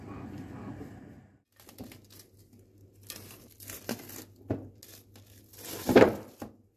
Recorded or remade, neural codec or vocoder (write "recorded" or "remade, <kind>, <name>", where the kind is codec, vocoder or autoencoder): recorded